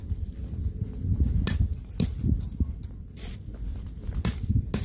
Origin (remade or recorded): recorded